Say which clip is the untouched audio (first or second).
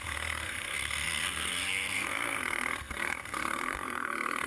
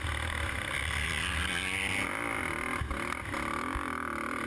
second